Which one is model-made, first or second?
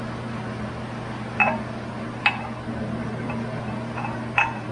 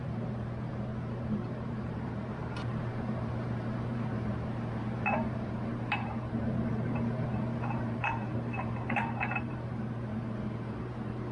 second